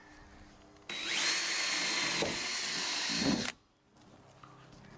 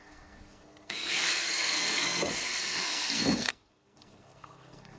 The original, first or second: first